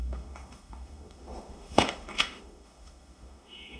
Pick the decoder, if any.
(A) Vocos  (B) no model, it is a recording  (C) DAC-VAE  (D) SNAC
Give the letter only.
C